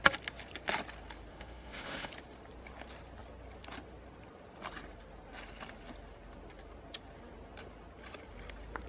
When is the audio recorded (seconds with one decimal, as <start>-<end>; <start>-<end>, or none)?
0.0-1.3; 2.1-8.9